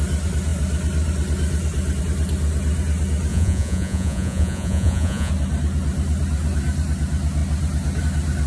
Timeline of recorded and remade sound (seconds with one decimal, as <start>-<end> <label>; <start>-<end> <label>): 0.0-3.3 recorded; 3.3-5.3 remade; 5.3-8.5 recorded